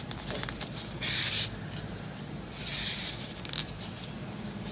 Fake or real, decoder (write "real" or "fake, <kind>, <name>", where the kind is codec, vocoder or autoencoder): real